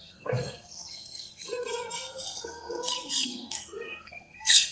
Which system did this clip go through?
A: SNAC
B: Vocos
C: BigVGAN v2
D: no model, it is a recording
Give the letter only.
A